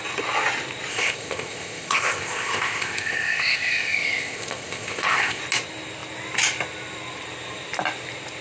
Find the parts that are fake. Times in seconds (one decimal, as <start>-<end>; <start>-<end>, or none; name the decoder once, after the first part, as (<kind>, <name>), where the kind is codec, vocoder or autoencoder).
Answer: 0.9-5.4 (codec, ZipCodec)

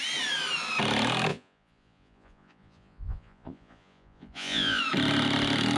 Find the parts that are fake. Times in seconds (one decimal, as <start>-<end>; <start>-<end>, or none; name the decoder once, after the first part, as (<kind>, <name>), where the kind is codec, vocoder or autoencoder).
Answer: 1.3-4.8 (vocoder, Vocos)

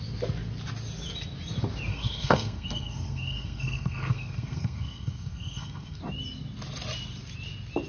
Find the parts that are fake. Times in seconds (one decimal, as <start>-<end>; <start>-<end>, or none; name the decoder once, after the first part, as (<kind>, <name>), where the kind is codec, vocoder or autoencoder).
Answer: 1.9-6.0 (codec, SNAC)

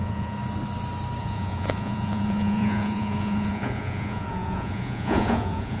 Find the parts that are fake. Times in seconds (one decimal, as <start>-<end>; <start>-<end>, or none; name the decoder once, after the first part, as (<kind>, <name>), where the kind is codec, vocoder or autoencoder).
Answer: 0.0-0.4 (vocoder, Vocos); 1.2-5.8

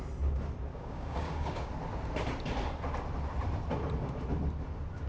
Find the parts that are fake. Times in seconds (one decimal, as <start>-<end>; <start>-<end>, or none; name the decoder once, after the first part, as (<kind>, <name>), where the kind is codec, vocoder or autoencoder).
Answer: 0.7-1.7 (codec, DAC)